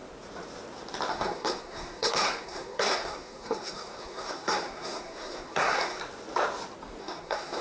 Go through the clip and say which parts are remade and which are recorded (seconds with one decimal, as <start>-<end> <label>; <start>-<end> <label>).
0.0-1.1 recorded; 1.1-6.0 remade; 6.0-7.0 recorded; 7.0-7.6 remade